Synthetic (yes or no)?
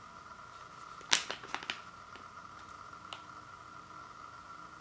no